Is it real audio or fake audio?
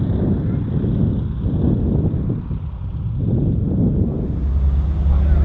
real